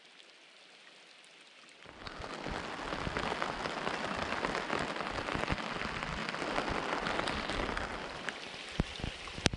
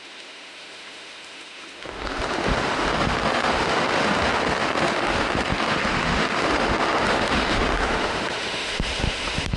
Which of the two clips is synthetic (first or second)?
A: second